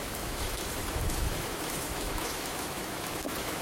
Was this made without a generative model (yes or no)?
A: no